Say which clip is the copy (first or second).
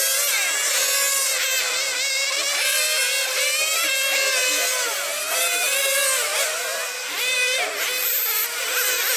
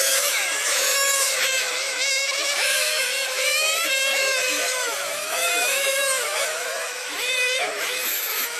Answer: second